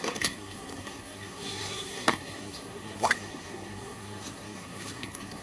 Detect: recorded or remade remade